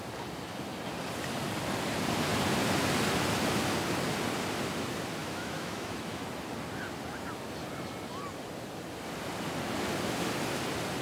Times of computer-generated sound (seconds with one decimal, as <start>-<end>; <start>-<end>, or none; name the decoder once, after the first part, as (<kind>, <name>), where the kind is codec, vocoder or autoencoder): 5.2-6.2 (autoencoder, DAC-VAE)